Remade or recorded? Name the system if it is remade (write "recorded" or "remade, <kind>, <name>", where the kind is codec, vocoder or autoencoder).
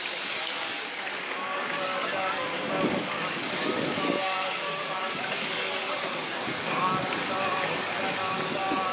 remade, codec, DAC